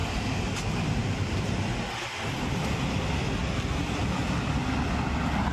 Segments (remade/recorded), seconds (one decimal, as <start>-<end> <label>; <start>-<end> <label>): 0.0-5.5 recorded